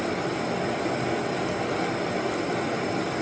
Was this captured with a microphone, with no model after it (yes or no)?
yes